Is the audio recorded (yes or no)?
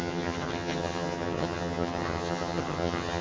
no